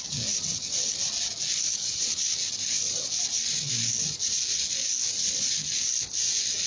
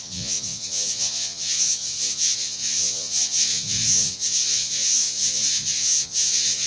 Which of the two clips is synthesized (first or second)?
second